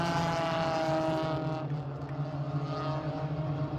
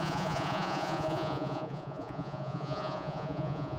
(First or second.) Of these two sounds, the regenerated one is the second